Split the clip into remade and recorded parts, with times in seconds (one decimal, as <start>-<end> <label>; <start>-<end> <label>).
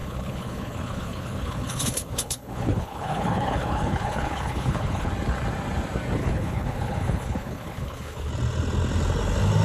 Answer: 0.0-5.1 remade; 5.1-6.2 recorded; 6.2-8.3 remade; 8.3-9.6 recorded